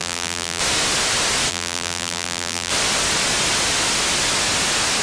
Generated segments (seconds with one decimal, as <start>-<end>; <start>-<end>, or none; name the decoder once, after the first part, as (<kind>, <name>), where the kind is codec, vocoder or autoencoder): 0.0-0.6 (vocoder, BigVGAN v2); 1.5-2.7